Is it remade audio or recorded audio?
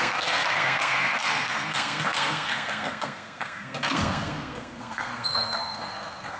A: remade